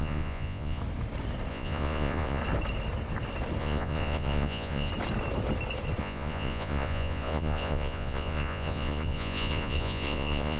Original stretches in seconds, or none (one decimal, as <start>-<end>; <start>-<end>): 0.8-1.5; 2.4-3.6; 4.9-6.0